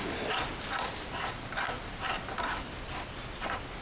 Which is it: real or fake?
real